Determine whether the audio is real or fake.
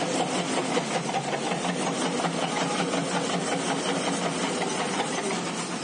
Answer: real